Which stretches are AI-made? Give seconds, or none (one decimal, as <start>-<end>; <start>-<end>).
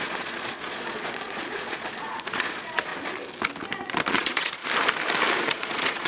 0.0-2.9; 4.1-4.6; 5.4-6.1